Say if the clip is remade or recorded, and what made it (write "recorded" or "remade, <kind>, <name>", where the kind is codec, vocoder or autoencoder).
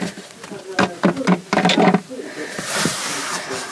recorded